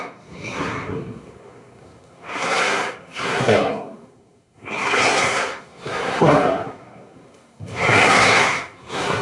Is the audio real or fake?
fake